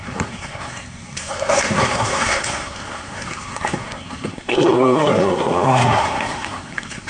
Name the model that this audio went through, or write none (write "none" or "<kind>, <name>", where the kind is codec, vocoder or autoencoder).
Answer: codec, SNAC